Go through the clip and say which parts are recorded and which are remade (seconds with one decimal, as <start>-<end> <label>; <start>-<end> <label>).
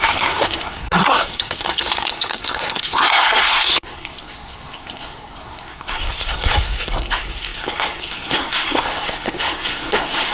0.0-10.3 remade